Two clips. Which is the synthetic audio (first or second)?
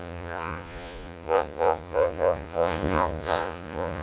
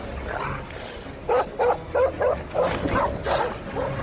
first